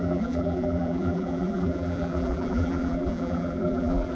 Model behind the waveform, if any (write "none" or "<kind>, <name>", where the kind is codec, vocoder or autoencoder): vocoder, BigVGAN v2